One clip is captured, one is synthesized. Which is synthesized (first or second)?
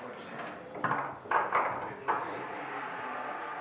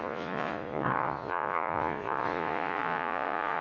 second